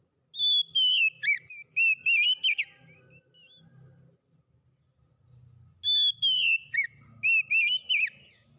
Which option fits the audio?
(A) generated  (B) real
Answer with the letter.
B